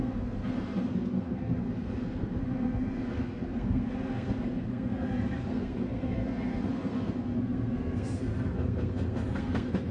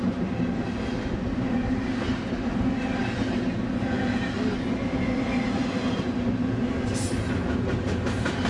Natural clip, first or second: second